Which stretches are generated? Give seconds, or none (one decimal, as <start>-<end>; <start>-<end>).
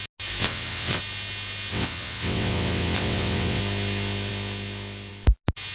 0.4-1.0; 1.7-3.6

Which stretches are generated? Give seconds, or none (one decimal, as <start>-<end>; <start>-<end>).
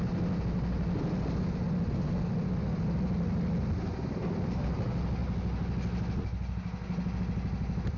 none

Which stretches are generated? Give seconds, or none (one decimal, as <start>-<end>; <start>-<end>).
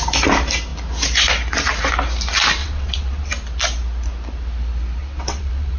2.6-3.3; 5.0-5.8